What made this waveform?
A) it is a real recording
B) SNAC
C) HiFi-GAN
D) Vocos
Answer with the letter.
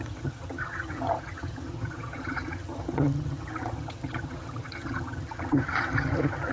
C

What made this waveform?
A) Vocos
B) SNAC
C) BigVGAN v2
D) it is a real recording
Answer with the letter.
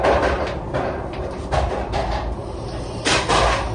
D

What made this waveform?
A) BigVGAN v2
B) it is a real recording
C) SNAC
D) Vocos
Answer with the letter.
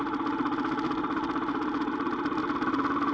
B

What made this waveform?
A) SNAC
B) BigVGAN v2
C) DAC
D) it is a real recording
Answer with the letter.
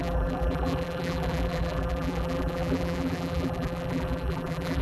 B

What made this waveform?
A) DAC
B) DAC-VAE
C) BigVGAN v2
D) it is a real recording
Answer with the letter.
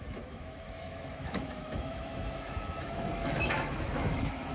B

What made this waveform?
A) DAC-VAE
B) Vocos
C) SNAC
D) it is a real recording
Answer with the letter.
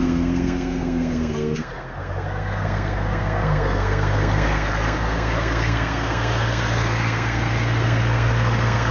C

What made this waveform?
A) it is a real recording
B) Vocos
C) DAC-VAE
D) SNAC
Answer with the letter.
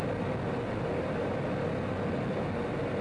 A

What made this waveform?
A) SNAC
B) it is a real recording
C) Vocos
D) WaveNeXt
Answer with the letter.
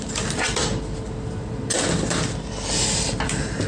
B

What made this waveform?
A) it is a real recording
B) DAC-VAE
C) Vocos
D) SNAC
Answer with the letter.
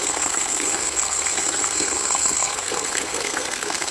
D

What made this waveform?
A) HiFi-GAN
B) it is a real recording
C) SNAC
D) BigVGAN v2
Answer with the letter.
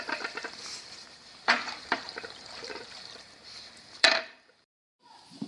D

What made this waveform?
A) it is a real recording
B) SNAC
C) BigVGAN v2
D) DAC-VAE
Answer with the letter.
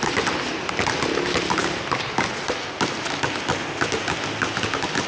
A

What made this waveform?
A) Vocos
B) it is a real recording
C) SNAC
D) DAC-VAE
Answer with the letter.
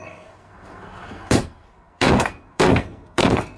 C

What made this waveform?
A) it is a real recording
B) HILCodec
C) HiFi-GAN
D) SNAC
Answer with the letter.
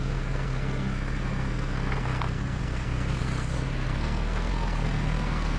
D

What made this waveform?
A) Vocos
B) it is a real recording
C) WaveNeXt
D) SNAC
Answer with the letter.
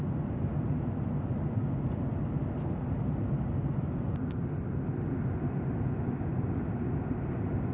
B